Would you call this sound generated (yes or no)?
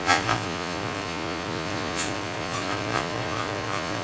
yes